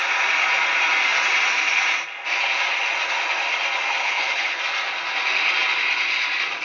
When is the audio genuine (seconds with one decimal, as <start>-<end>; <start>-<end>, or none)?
0.0-4.0; 4.6-6.6